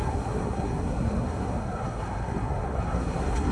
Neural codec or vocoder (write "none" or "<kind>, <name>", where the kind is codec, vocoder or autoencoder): codec, SNAC